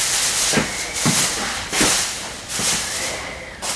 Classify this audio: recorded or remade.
recorded